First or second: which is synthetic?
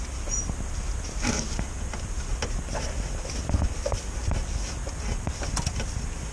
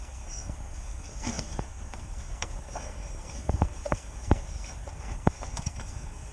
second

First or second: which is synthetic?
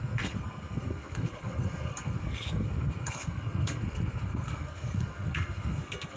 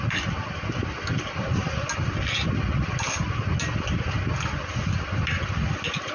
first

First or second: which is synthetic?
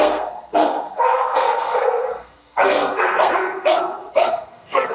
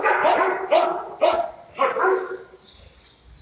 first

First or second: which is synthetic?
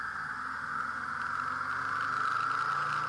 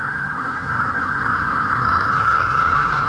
second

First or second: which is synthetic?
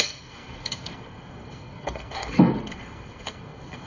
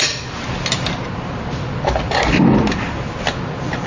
first